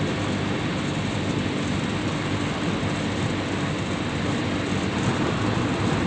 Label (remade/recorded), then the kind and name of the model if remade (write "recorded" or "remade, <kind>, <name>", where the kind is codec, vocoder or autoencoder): remade, vocoder, BigVGAN v2